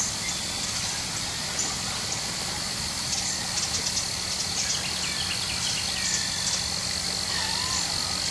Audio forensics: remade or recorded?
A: recorded